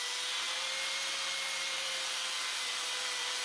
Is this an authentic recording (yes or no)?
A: no